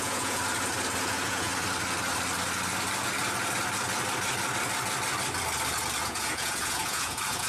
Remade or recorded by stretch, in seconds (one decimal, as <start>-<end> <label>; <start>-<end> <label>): 0.0-0.4 remade; 0.4-1.0 recorded; 1.0-1.5 remade; 1.5-6.0 recorded; 6.0-7.5 remade